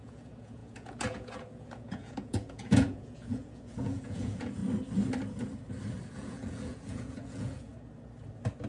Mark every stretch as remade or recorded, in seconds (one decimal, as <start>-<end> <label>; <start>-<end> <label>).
0.0-4.6 remade; 4.6-6.1 recorded; 6.1-7.7 remade; 7.7-8.7 recorded